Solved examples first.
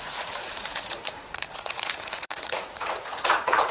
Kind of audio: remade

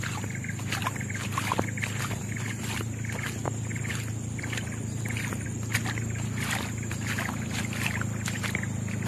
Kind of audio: recorded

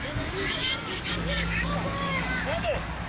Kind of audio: remade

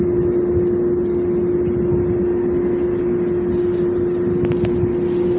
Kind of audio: recorded